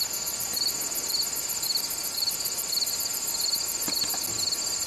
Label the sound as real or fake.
real